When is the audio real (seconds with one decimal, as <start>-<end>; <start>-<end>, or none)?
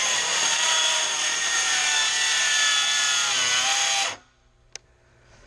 1.8-5.1